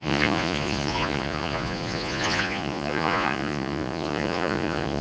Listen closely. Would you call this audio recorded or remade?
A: remade